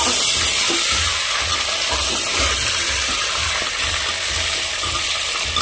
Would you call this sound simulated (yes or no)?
no